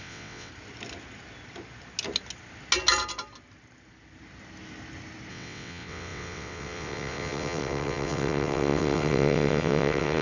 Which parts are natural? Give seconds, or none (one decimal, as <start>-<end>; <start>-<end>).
0.5-5.3